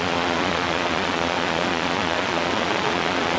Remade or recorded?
remade